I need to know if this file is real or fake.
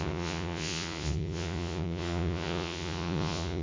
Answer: fake